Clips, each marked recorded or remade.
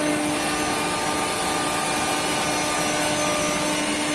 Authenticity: recorded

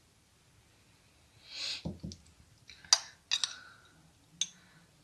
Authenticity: recorded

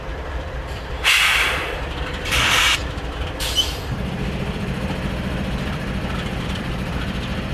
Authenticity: remade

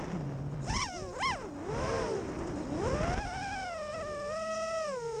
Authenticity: recorded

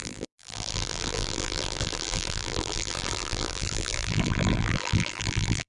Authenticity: remade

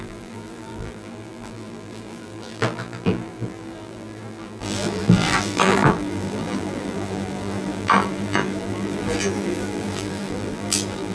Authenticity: remade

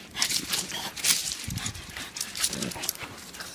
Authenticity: remade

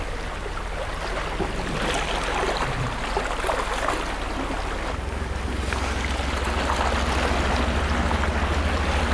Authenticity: recorded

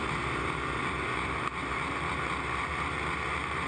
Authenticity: remade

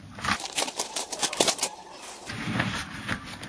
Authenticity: remade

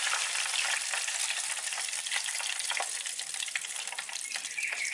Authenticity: remade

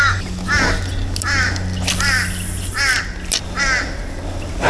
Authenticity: recorded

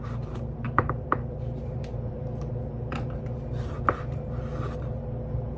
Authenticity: remade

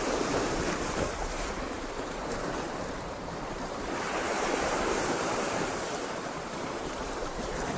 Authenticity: remade